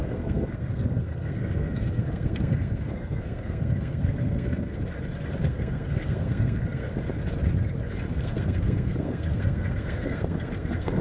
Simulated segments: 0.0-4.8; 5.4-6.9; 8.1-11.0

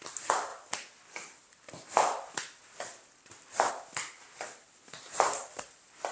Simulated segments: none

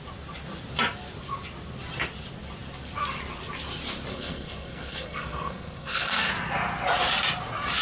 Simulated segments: 4.1-6.3

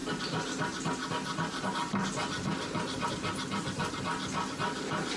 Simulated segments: none

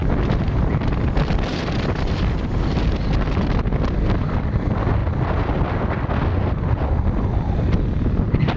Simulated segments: none

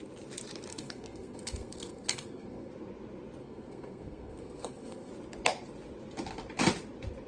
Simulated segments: 0.7-2.7; 3.4-5.1